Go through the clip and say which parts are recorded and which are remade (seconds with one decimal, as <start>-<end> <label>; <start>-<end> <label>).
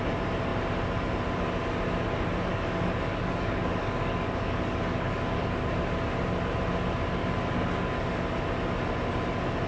0.0-2.5 recorded; 2.5-5.7 remade; 5.7-7.2 recorded; 7.2-8.4 remade; 8.4-9.7 recorded